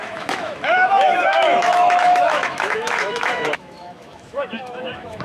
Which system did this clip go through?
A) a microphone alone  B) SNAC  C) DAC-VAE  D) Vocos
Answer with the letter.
C